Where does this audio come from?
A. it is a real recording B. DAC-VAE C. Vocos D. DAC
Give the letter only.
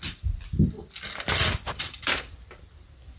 A